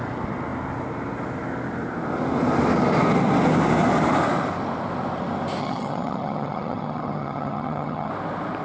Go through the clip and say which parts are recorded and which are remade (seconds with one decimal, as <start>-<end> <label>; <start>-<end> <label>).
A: 0.0-5.6 recorded; 5.6-8.1 remade; 8.1-8.6 recorded